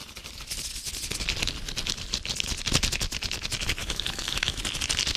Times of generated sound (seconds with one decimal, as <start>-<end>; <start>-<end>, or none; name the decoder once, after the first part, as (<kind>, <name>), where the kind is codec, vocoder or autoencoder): 3.8-4.6 (autoencoder, DAC-VAE)

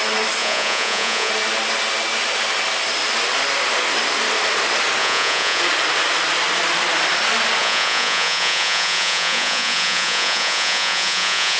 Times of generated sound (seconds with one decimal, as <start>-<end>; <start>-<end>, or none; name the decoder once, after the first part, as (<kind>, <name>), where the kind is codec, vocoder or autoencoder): 0.4-1.3 (vocoder, Vocos); 5.0-5.6; 7.6-11.6

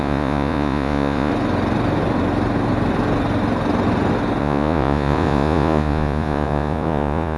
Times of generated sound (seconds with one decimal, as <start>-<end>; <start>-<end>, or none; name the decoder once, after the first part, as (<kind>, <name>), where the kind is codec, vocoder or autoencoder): 0.0-1.3 (vocoder, Vocos); 4.4-7.4

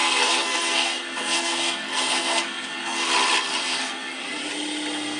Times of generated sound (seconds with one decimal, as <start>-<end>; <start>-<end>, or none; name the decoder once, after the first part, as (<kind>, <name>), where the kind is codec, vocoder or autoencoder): 0.0-3.1 (codec, SNAC); 3.6-4.2

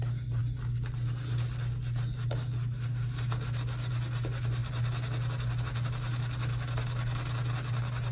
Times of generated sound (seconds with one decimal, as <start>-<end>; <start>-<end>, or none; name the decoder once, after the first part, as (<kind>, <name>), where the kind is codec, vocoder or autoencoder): none